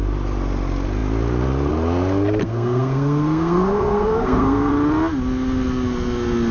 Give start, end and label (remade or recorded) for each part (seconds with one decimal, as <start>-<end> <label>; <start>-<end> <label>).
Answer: 0.0-2.4 recorded; 2.4-4.7 remade; 4.7-6.5 recorded